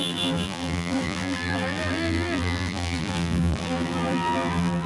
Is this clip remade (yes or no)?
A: yes